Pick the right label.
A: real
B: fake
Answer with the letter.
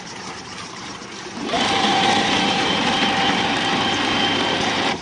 B